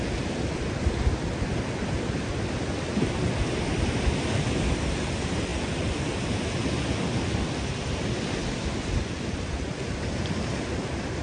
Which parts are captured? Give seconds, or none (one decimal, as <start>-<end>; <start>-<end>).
0.0-11.2